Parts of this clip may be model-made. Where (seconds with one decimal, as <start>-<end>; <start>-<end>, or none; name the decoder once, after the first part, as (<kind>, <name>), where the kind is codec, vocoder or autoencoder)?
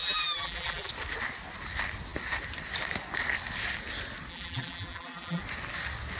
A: 0.0-0.9 (vocoder, BigVGAN v2); 4.3-5.4